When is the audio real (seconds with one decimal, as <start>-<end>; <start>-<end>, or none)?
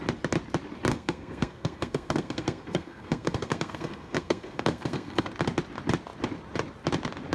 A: 0.0-0.9; 5.3-7.3